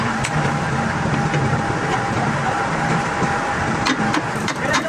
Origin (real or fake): fake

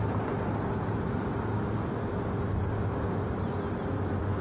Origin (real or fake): real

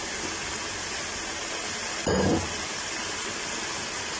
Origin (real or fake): real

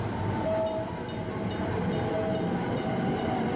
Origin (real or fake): real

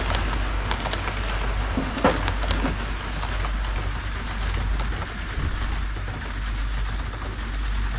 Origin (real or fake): real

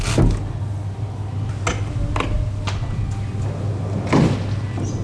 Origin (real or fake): real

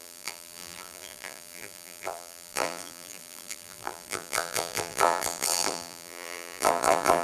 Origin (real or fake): fake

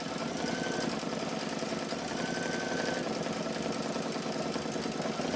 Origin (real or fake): real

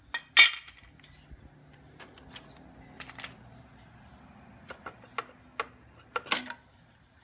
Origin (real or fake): real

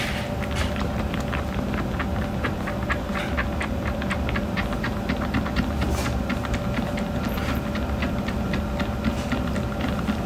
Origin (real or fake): real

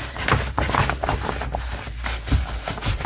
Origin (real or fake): real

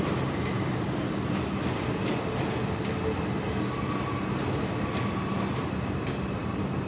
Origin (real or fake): real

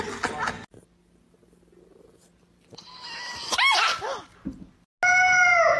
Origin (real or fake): real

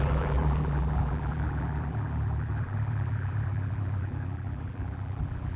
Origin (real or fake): fake